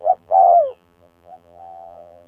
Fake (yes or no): yes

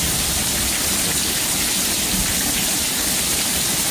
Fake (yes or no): no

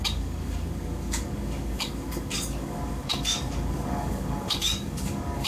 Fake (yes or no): yes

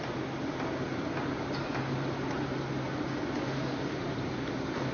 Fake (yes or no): no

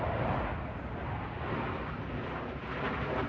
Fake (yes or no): no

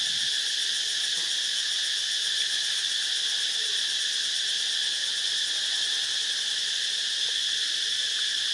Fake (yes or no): no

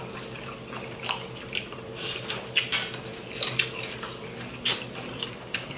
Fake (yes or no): yes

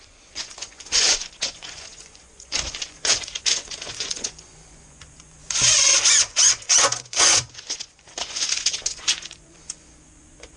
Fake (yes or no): yes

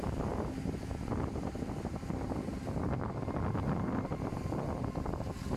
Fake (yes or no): no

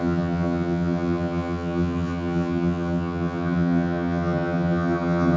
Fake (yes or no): yes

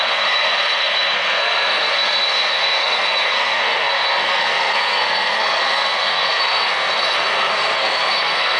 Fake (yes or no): yes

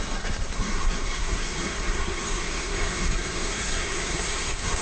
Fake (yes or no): yes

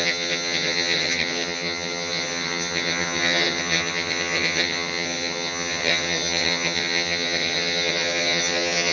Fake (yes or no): yes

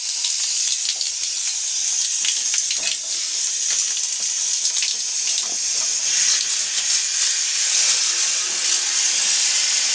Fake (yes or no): no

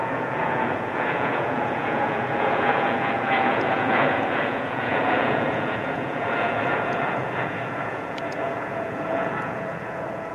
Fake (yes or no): yes